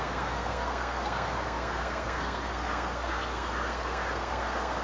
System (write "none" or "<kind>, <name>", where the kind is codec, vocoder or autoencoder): codec, SNAC